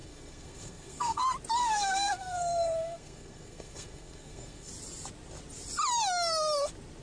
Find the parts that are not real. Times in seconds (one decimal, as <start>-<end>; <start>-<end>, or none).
0.0-1.2; 1.6-4.7